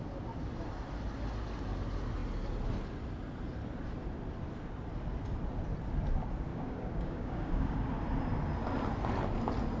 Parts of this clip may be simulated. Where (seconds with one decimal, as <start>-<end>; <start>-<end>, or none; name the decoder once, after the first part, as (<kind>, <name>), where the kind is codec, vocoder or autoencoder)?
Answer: 6.5-7.7 (codec, DAC)